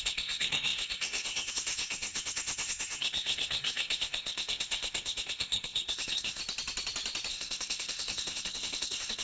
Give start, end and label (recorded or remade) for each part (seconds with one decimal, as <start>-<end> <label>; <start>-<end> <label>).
0.0-6.4 remade; 6.4-7.3 recorded; 7.3-9.2 remade